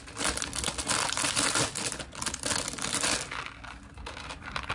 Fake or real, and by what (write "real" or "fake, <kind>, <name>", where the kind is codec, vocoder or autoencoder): real